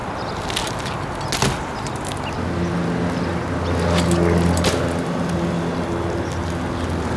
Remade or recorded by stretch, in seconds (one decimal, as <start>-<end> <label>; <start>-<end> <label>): 0.0-7.2 recorded